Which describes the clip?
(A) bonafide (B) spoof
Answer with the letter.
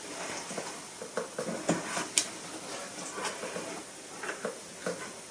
A